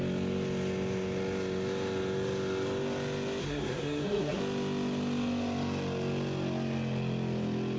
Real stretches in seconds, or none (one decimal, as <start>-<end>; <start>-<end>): 0.0-3.4; 4.4-7.8